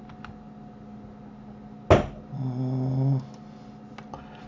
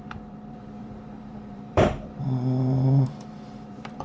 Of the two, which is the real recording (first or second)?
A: first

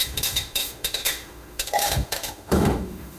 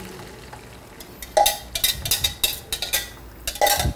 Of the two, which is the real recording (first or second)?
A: second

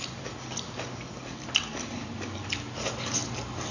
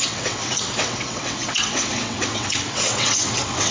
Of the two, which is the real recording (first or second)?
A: first